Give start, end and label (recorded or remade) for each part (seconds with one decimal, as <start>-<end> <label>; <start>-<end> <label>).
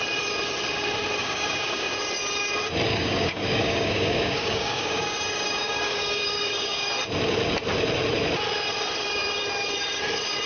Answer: 0.0-1.2 recorded; 1.2-1.9 remade; 1.9-2.9 recorded; 2.9-6.9 remade; 6.9-10.5 recorded